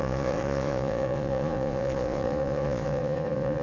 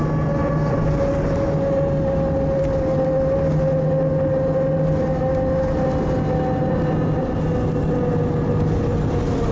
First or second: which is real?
second